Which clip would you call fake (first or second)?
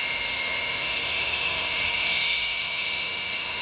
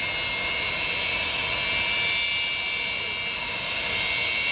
first